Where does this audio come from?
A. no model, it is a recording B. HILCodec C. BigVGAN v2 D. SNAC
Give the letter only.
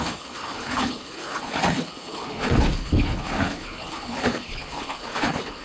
B